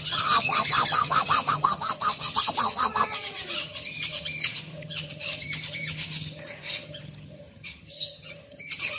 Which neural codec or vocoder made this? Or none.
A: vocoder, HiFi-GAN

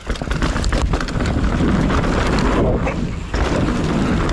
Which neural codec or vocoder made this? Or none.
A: none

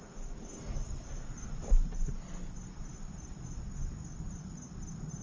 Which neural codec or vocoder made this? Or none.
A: none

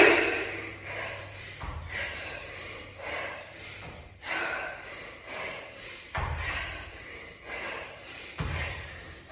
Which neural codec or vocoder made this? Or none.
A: vocoder, BigVGAN v2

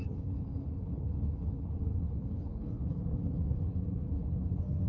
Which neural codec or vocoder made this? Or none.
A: codec, HILCodec